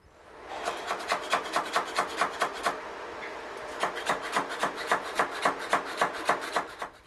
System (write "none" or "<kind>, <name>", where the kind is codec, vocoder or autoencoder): none